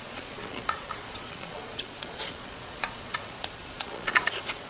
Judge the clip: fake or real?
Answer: fake